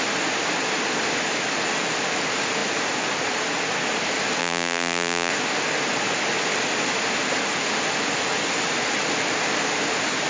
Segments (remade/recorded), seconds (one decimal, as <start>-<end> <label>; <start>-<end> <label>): 0.0-4.4 recorded; 4.4-5.3 remade; 5.3-10.3 recorded

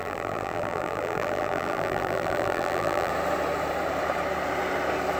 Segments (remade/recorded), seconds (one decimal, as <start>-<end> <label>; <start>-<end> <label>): 0.0-3.1 remade; 3.1-5.2 recorded

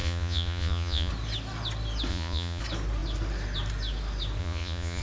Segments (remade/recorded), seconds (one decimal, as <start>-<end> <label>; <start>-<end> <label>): 0.0-1.1 remade; 1.1-2.1 recorded; 2.1-2.6 remade; 2.6-4.4 recorded; 4.4-5.0 remade

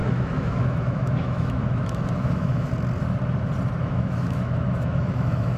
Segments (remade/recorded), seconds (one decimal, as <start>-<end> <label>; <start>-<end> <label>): 0.0-2.7 remade; 2.7-3.8 recorded; 3.8-5.6 remade

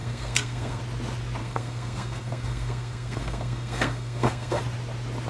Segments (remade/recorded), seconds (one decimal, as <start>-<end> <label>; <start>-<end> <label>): 0.0-0.8 remade; 0.8-1.4 recorded; 1.4-4.6 remade; 4.6-5.3 recorded

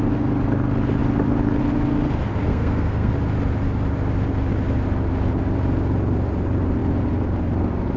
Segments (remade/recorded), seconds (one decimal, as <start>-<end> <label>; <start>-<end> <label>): 0.0-2.5 recorded; 2.5-3.1 remade; 3.1-8.0 recorded